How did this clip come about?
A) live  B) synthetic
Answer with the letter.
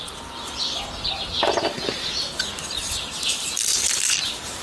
A